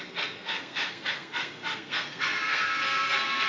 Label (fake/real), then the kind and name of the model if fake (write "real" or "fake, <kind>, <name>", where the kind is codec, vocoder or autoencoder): fake, codec, SNAC